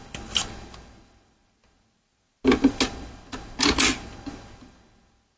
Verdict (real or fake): real